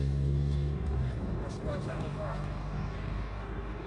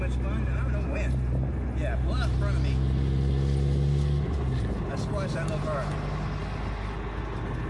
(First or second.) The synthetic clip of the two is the first